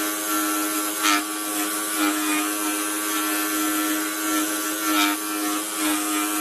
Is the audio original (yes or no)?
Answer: yes